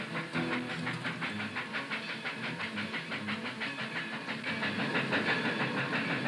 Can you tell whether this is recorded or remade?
recorded